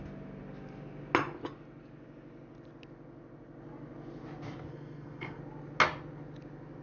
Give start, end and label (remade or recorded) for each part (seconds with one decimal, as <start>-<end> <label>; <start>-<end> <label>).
0.0-4.7 recorded; 4.7-5.4 remade; 5.4-6.8 recorded